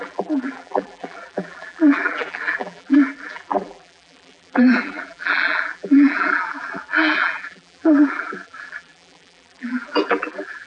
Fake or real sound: fake